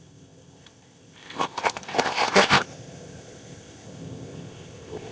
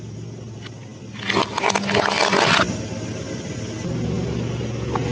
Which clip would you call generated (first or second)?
first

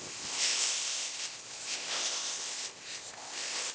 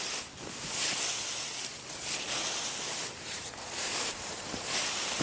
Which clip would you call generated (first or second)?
first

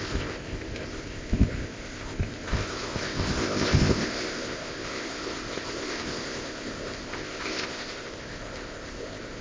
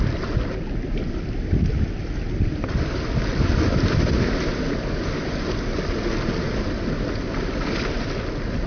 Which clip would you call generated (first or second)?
first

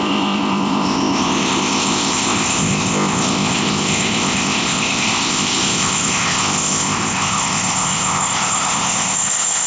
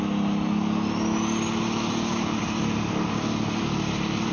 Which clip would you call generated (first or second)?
first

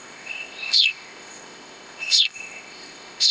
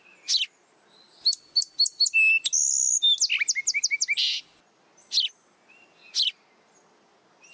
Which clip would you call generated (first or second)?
first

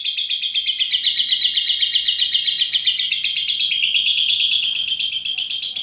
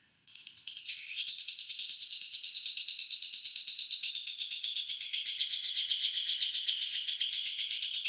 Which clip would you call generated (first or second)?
second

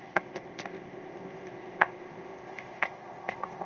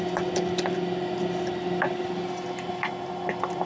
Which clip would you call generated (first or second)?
first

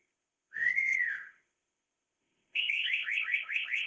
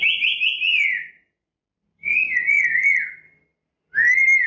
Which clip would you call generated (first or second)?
first